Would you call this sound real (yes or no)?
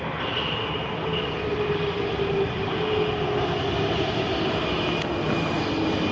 yes